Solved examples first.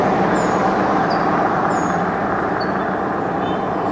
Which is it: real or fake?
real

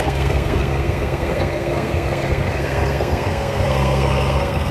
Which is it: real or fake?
fake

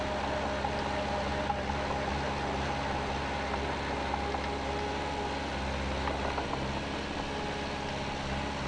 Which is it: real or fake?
real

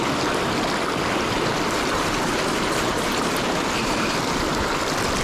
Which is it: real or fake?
real